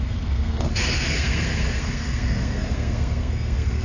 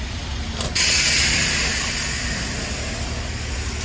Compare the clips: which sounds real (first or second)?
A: second